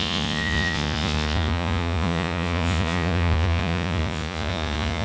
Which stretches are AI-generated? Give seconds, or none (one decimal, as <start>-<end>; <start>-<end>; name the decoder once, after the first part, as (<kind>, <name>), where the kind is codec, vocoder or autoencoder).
0.0-5.0 (vocoder, Vocos)